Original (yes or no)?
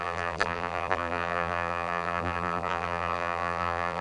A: no